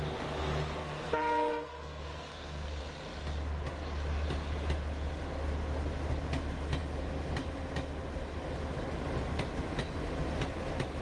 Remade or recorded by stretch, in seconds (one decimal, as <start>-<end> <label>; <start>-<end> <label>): 0.0-0.8 recorded; 0.8-2.8 remade; 2.8-11.0 recorded